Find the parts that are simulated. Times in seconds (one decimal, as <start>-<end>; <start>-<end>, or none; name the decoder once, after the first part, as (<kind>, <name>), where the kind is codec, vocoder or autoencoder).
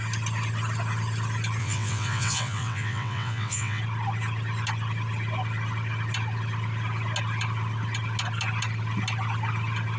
1.6-3.8 (vocoder, WaveNeXt)